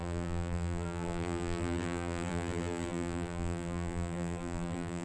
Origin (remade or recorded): remade